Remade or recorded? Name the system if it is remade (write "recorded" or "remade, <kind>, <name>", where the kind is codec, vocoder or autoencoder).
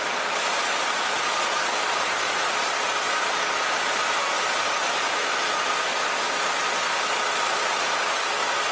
recorded